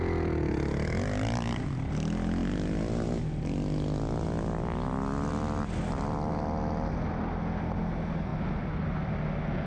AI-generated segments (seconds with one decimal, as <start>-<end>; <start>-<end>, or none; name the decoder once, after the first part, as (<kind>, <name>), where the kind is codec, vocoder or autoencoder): none